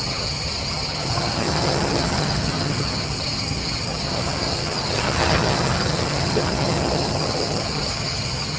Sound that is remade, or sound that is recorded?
remade